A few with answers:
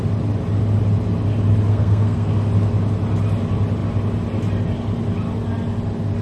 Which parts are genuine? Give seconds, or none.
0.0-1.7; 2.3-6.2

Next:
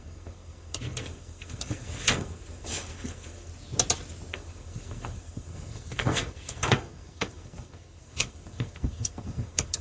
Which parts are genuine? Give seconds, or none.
3.5-4.3

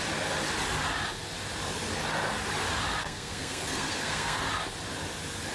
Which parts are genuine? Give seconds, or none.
0.0-3.0; 4.4-5.5

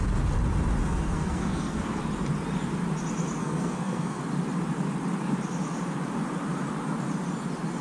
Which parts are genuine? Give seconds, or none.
0.0-0.8; 2.0-3.4; 4.2-7.8

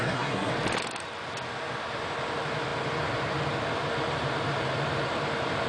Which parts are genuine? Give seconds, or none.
0.5-5.7

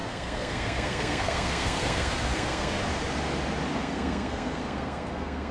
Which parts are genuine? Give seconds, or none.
2.8-3.7

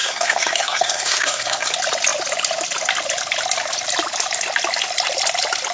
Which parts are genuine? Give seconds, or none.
1.7-5.7

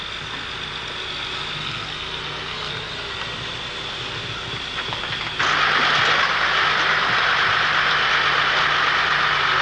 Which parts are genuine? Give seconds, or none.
0.0-1.6; 2.7-9.6